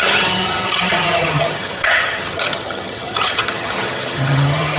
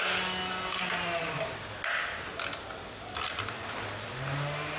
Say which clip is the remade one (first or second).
first